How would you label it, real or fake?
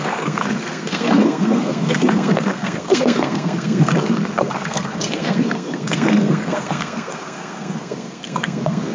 fake